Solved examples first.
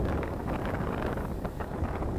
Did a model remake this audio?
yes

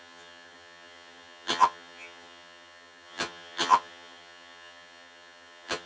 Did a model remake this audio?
yes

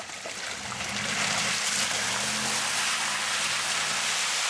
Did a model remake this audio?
no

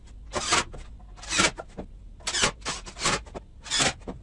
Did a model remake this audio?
no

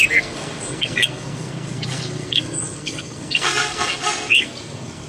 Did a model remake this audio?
yes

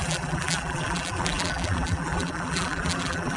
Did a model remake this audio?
yes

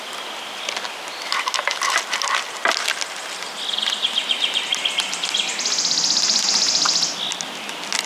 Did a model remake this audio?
no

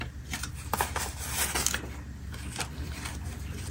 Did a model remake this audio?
no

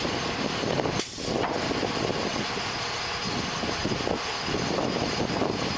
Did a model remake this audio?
no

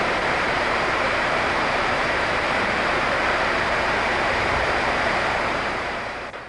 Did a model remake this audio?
yes